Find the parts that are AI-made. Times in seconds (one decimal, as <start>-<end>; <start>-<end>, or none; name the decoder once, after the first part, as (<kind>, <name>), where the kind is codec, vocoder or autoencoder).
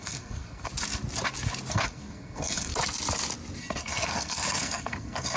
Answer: 0.0-0.7 (codec, SNAC); 1.7-2.7; 3.6-5.4